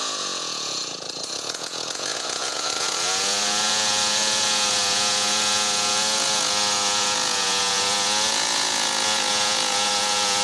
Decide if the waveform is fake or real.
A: fake